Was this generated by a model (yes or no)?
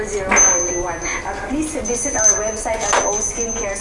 no